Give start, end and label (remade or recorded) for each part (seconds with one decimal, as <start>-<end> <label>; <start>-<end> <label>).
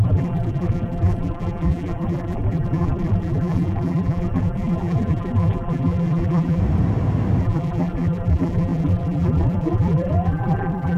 0.0-6.6 remade; 6.6-7.4 recorded; 7.4-11.0 remade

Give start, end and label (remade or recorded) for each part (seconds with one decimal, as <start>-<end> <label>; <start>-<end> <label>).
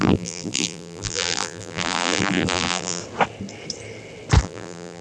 0.0-3.0 remade; 3.0-4.4 recorded; 4.4-5.0 remade